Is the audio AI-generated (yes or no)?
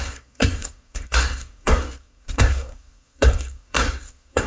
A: yes